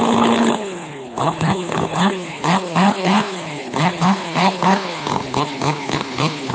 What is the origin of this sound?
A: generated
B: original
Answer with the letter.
A